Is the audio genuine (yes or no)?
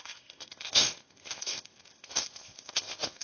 no